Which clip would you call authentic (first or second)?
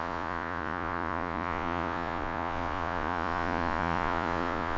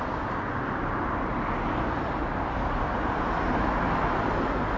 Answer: second